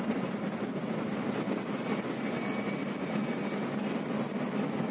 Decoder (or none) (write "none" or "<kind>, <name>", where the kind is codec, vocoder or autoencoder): none